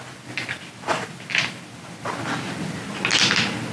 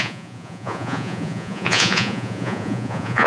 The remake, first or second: second